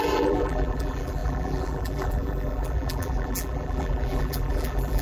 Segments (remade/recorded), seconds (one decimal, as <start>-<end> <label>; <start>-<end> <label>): 0.0-5.0 remade

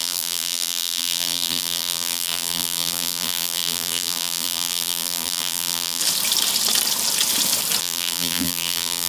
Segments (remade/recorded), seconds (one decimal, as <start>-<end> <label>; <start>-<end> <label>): 0.0-6.0 remade; 6.0-7.8 recorded; 7.8-9.1 remade

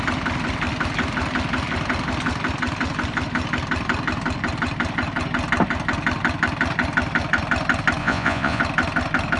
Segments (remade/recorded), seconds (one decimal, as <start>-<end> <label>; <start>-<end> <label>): 0.0-8.0 recorded; 8.0-8.6 remade; 8.6-9.4 recorded

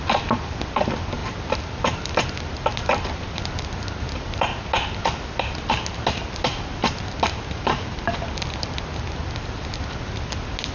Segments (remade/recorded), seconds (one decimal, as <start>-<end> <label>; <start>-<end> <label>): 0.0-10.7 recorded